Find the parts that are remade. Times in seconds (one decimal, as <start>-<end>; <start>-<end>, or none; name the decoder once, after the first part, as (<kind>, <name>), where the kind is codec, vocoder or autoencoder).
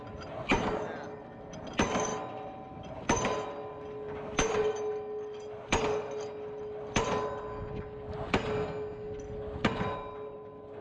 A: none